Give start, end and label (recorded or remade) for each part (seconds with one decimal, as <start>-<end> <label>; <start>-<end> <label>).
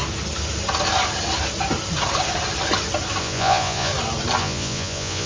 0.0-3.2 recorded; 3.2-3.9 remade; 3.9-4.4 recorded; 4.4-5.3 remade